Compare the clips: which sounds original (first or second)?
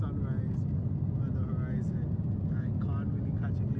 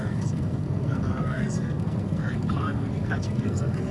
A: first